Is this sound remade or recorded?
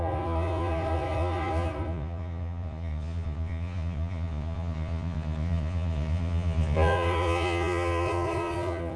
remade